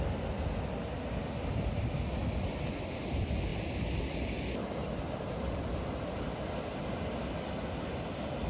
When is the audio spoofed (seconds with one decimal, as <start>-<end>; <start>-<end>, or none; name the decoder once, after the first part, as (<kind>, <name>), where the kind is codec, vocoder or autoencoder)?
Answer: none